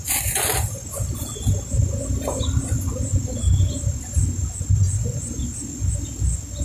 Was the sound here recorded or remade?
recorded